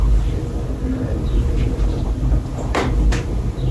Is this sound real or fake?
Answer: real